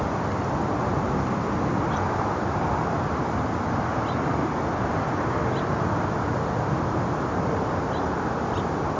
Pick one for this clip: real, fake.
real